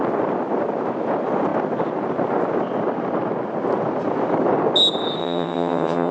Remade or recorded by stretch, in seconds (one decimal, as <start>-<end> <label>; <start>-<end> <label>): 0.0-5.2 recorded; 5.2-6.1 remade